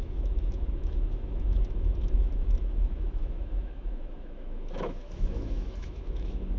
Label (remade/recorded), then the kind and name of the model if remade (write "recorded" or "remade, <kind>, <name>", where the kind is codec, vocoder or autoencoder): remade, autoencoder, DAC-VAE